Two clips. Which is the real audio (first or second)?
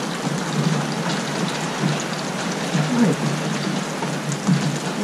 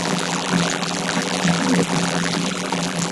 first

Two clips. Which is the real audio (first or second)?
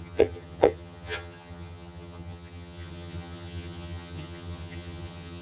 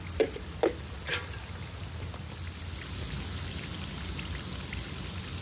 second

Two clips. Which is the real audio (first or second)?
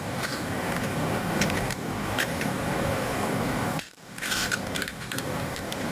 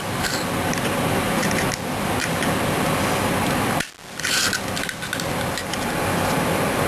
second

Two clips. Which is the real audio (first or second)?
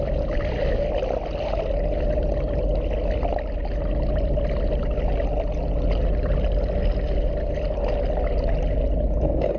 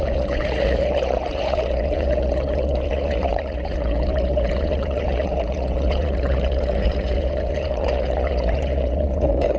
first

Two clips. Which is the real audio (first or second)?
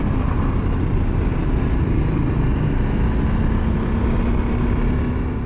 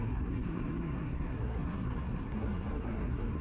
first